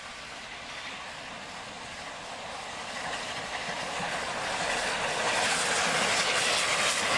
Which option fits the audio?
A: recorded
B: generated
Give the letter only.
A